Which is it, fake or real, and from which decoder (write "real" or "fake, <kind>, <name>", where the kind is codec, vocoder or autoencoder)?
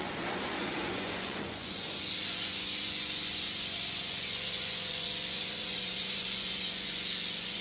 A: fake, vocoder, Vocos